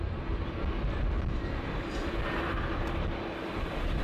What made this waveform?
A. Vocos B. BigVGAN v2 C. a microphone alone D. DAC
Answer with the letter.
C